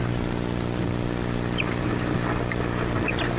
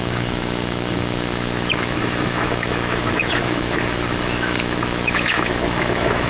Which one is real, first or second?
first